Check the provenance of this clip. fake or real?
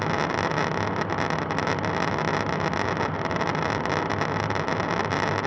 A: real